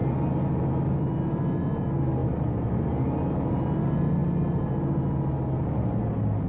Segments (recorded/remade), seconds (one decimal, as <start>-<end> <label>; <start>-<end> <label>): 0.0-6.5 recorded

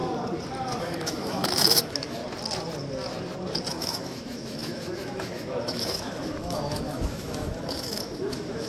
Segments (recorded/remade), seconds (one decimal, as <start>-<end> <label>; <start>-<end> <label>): 0.0-0.8 recorded; 0.8-2.2 remade; 2.2-3.7 recorded; 3.7-8.7 remade

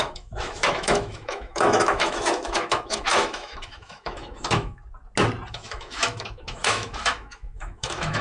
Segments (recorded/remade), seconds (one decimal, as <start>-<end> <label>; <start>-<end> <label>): 0.0-4.8 remade; 4.8-5.5 recorded; 5.5-8.2 remade

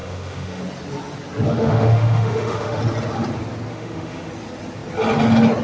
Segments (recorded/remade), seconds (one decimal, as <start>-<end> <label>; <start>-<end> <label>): 0.0-0.6 remade; 0.6-1.5 recorded; 1.5-2.8 remade; 2.8-3.7 recorded; 3.7-4.3 remade; 4.3-5.6 recorded

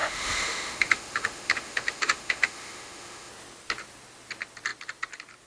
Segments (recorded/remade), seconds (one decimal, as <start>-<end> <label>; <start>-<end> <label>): 0.0-3.3 remade; 3.3-5.5 recorded

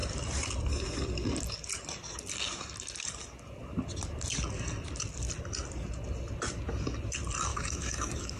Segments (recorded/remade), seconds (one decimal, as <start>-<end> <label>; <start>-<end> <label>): 0.0-7.5 recorded; 7.5-8.4 remade

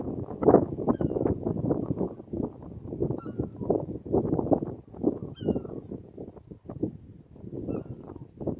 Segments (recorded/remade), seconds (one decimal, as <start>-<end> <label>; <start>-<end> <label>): 0.0-0.9 remade; 0.9-8.6 recorded

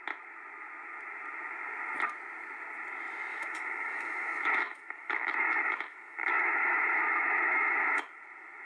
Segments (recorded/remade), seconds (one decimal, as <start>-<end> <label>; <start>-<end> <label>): 0.0-3.3 recorded; 3.3-8.2 remade; 8.2-8.7 recorded